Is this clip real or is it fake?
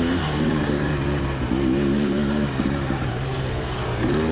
fake